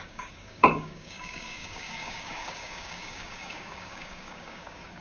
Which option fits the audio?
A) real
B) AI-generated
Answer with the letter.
B